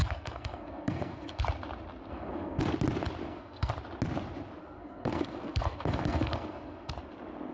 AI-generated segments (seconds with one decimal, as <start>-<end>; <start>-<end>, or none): 0.0-1.4; 2.1-2.6; 3.2-3.7; 4.6-6.9